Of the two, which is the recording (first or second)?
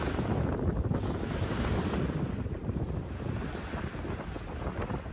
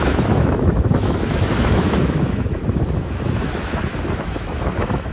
first